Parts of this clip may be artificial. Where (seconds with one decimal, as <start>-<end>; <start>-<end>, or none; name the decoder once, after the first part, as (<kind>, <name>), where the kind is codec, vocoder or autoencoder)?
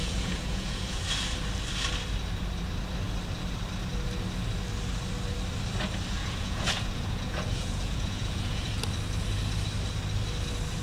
0.0-1.0 (vocoder, Vocos); 6.2-8.7